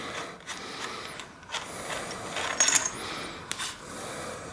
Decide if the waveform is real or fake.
real